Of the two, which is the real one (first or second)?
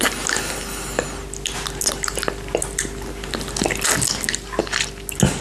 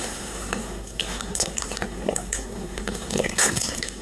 first